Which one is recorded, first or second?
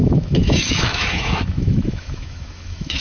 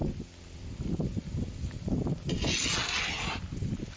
second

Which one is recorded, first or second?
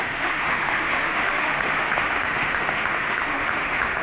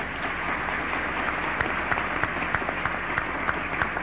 second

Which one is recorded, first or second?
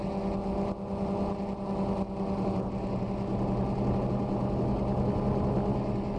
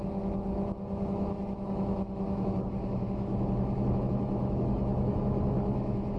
first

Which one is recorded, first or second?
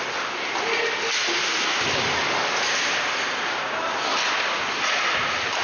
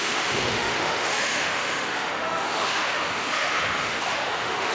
first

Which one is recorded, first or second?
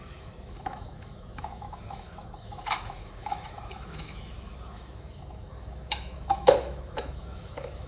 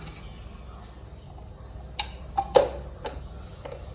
second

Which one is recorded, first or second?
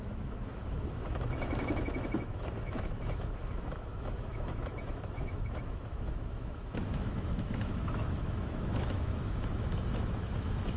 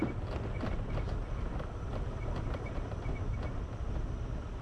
second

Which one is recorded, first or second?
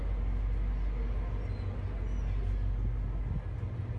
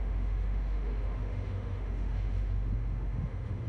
first